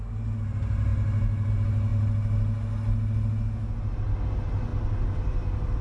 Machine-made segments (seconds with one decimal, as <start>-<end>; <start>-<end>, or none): none